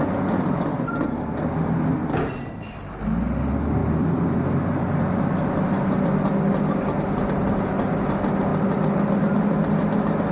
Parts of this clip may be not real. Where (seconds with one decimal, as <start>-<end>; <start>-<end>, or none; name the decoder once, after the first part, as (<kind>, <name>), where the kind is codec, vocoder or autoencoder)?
none